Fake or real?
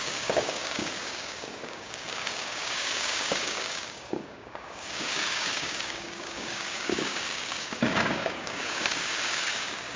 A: fake